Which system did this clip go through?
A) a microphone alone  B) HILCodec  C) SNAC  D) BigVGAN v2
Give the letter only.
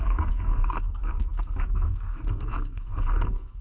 C